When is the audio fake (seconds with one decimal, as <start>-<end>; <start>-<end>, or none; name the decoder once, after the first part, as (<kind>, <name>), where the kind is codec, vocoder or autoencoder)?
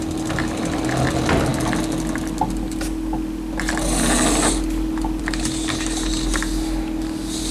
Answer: none